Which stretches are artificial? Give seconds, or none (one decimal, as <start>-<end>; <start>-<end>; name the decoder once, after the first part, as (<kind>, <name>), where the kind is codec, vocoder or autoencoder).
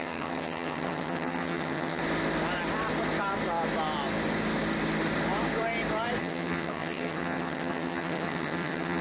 0.0-2.0 (vocoder, HiFi-GAN); 6.2-9.0